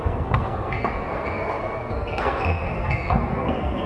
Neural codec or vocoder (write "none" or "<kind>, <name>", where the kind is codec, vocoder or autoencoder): codec, SNAC